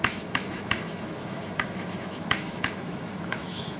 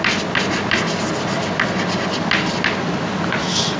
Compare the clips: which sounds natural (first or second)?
second